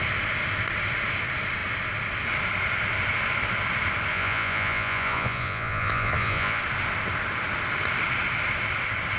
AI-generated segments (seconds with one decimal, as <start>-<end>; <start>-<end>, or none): 4.1-6.6